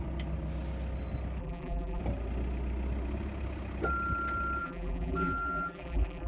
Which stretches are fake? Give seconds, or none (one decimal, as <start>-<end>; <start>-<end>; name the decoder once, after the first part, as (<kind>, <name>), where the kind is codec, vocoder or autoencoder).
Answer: 1.4-2.0 (vocoder, BigVGAN v2); 4.6-6.3